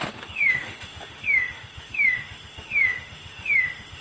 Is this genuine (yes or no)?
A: no